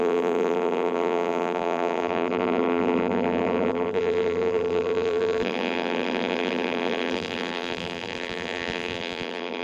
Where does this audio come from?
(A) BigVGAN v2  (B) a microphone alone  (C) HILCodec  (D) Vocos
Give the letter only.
A